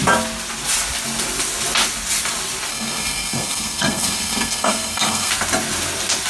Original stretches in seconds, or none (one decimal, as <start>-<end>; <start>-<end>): 0.0-2.7; 5.3-6.3